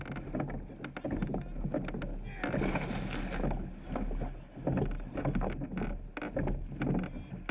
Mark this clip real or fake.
real